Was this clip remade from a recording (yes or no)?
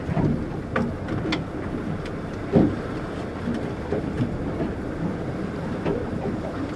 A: no